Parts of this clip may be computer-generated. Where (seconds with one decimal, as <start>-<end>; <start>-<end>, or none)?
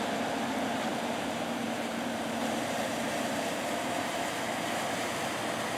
0.9-4.4